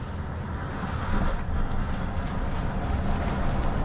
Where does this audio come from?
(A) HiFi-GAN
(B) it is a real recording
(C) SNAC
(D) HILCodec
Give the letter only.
B